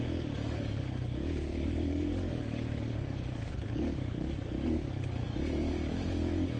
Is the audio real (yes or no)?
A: no